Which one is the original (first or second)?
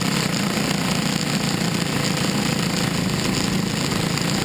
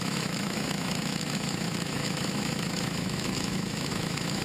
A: first